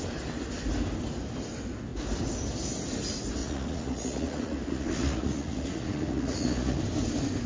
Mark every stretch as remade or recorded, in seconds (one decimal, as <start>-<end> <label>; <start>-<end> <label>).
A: 0.0-3.4 recorded; 3.4-6.8 remade; 6.8-7.5 recorded